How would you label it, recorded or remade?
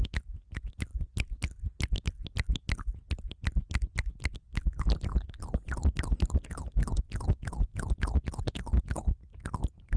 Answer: recorded